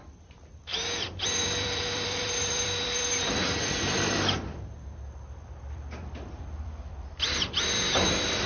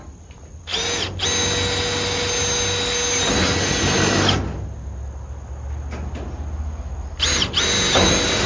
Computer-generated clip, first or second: first